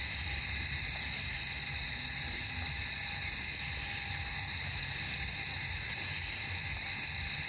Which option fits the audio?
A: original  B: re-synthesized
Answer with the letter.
A